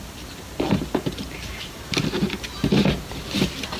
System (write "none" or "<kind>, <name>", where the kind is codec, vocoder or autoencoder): vocoder, BigVGAN v2